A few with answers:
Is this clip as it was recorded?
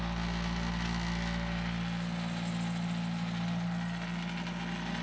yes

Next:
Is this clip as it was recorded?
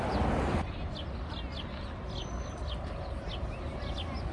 yes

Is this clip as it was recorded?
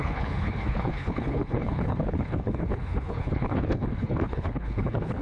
no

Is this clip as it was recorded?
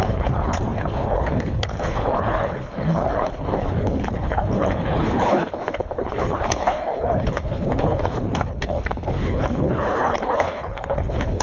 no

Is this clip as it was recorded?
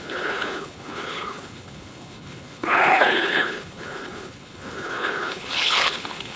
no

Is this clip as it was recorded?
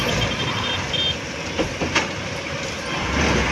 yes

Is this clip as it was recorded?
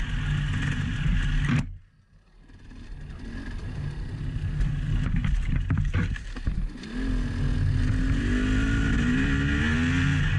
yes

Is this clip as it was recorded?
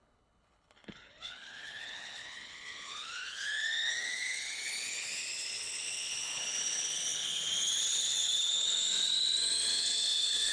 no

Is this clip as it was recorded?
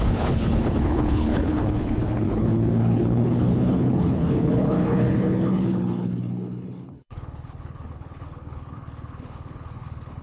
no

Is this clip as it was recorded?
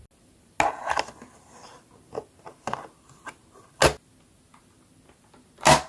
yes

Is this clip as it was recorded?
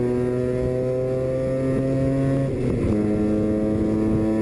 yes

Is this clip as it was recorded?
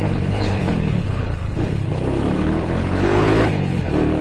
no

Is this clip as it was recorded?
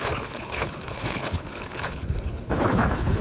no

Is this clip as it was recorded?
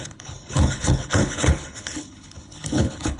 no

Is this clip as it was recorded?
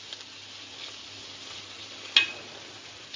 yes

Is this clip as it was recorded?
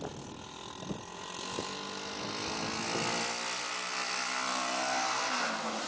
yes